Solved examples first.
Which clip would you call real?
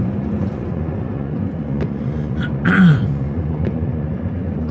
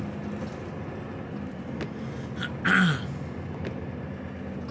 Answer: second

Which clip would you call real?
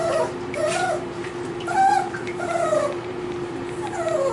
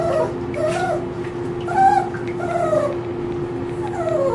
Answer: second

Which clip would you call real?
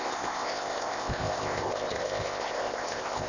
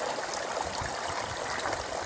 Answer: second